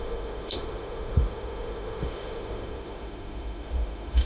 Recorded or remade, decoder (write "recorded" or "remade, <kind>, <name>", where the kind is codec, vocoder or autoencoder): remade, autoencoder, DAC-VAE